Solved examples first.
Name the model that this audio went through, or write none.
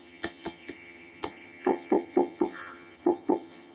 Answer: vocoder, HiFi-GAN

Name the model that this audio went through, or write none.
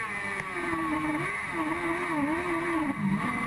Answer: none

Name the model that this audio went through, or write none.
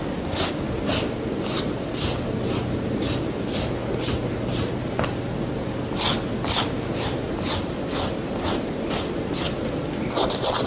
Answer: none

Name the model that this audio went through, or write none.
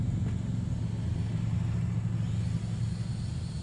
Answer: none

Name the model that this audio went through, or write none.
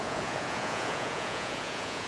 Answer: vocoder, Vocos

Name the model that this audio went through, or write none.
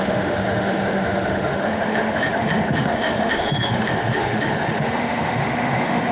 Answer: autoencoder, DAC-VAE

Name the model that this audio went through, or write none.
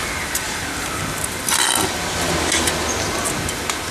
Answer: none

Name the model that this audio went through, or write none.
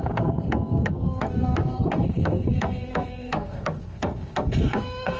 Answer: codec, SNAC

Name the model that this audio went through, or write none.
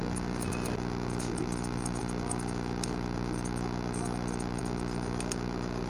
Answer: none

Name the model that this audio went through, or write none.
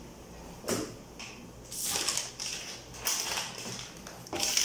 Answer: none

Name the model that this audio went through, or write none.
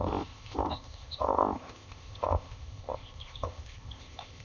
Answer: codec, ZipCodec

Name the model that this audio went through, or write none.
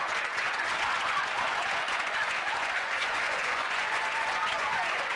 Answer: vocoder, Vocos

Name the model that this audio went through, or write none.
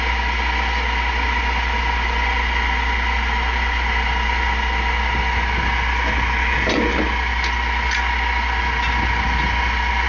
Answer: none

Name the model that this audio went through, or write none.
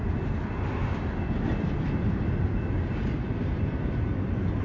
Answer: none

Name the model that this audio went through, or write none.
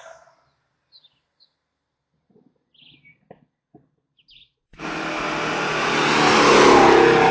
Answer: none